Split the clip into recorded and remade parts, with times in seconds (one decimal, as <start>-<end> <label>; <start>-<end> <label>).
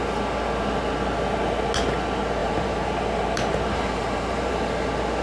0.0-2.4 recorded; 2.4-4.5 remade; 4.5-5.2 recorded